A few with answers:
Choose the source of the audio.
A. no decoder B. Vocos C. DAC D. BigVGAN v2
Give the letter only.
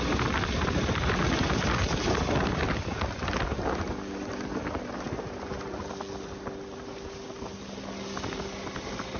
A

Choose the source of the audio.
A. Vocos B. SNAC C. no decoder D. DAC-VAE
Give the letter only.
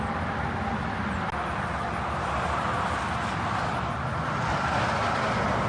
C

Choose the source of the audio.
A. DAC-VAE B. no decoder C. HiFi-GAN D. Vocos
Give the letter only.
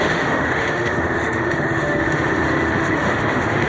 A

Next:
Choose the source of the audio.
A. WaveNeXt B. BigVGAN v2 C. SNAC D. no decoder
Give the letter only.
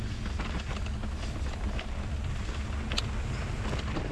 D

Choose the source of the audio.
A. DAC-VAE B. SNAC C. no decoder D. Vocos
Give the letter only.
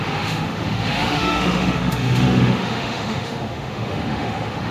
A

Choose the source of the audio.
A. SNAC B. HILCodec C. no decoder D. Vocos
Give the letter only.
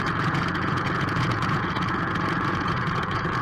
D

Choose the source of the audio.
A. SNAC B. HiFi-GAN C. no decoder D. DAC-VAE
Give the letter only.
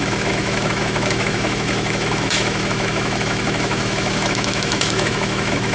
D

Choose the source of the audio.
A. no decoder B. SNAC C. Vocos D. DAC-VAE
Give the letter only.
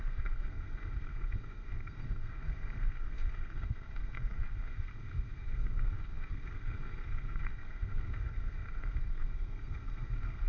B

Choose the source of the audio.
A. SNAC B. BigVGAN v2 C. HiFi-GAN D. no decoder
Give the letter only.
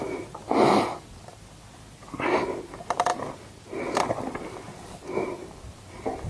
D